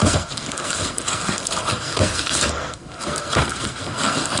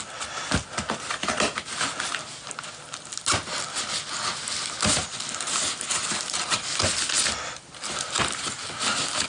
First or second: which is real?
second